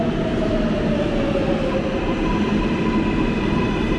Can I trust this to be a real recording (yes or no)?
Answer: yes